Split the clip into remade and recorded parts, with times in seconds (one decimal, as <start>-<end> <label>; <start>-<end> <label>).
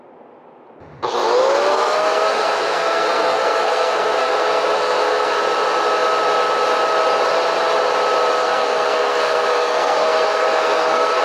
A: 0.0-1.7 recorded; 1.7-5.4 remade; 5.4-8.4 recorded; 8.4-11.2 remade